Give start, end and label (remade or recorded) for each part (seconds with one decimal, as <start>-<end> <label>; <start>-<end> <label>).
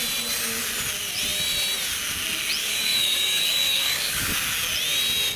0.0-2.6 recorded; 2.6-4.3 remade; 4.3-5.4 recorded